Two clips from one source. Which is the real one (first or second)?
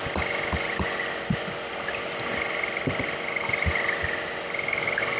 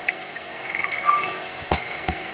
first